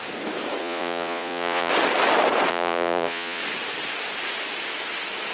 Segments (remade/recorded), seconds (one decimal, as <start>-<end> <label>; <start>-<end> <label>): 0.0-0.6 recorded; 0.6-1.7 remade; 1.7-2.5 recorded; 2.5-3.4 remade; 3.4-5.3 recorded